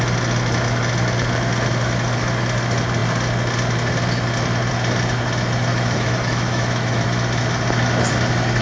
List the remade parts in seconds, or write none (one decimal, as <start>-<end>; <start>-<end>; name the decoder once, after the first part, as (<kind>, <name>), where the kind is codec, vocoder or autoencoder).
5.7-7.0 (autoencoder, DAC-VAE)